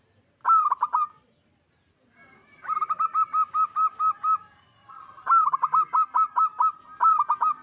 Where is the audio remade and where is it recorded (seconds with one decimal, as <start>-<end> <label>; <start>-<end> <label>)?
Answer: 0.0-7.6 recorded